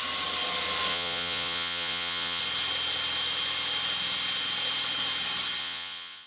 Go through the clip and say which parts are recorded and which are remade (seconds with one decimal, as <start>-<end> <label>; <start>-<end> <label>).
0.0-0.9 recorded; 0.9-2.4 remade; 2.4-5.6 recorded; 5.6-6.3 remade